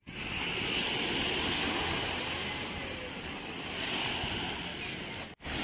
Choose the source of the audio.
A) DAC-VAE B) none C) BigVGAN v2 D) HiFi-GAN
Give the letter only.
B